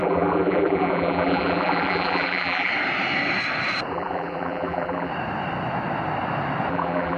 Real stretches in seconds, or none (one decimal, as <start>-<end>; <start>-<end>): 2.7-3.9; 5.1-6.7